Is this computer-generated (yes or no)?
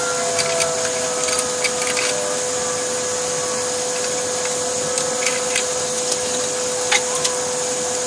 no